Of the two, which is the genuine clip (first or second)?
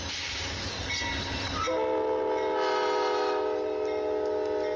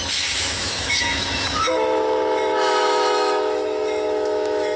first